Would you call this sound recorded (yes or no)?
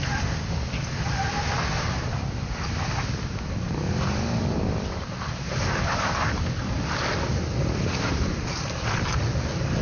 yes